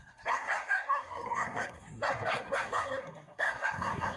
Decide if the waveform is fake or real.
fake